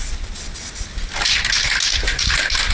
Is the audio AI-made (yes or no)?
no